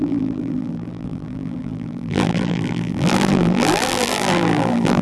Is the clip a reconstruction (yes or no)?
yes